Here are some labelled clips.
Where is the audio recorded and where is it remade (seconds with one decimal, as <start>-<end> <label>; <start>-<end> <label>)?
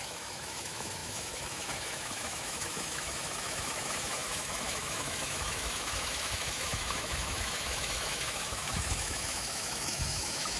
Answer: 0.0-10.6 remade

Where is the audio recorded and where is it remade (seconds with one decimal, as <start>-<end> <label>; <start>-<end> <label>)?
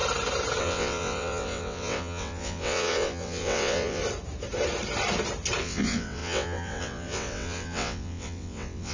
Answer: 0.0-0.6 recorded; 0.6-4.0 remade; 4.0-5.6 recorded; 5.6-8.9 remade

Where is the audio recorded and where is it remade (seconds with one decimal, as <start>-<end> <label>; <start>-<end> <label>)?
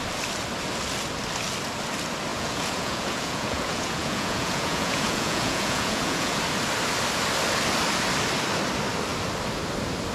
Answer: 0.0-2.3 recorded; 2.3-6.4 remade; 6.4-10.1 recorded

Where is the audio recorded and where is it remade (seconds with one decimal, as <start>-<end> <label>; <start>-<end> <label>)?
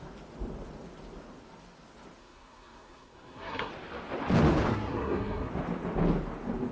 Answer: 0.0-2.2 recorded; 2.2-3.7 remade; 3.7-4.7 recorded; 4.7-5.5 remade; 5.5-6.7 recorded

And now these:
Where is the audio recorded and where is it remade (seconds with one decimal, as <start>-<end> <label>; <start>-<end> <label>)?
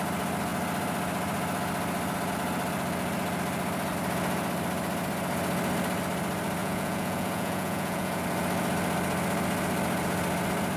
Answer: 0.0-6.6 recorded; 6.6-8.2 remade; 8.2-10.8 recorded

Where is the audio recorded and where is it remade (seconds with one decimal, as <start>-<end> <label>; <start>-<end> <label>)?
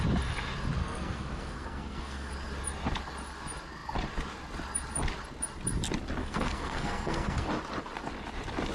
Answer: 0.0-0.8 recorded; 0.8-2.3 remade; 2.3-6.2 recorded; 6.2-7.5 remade; 7.5-8.7 recorded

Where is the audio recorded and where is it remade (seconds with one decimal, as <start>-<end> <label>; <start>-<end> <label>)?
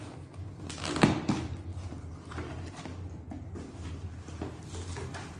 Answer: 0.0-5.4 recorded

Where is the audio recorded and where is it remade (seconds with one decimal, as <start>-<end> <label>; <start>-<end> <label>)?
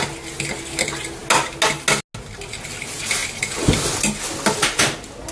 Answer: 0.0-3.2 recorded; 3.2-4.0 remade; 4.0-5.3 recorded